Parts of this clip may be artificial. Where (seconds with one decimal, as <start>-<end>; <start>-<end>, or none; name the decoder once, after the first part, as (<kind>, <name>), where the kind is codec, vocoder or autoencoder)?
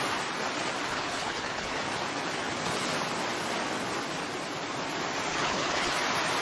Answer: 0.9-1.8 (codec, HILCodec); 5.3-5.9